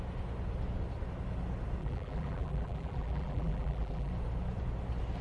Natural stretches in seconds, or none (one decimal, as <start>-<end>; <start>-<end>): 0.0-1.8; 4.1-5.2